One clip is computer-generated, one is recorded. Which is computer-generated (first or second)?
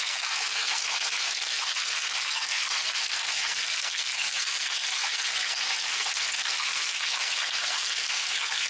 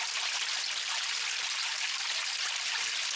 first